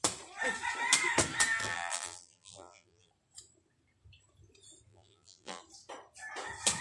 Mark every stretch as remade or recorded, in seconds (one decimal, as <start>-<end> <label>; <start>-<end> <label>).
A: 0.0-1.6 recorded; 1.6-3.1 remade; 3.1-4.9 recorded; 4.9-5.6 remade; 5.6-6.8 recorded